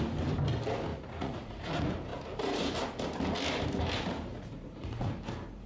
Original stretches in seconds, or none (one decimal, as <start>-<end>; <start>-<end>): 0.0-0.9; 1.5-4.3; 5.1-5.7